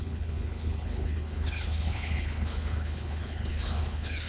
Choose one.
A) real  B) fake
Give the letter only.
B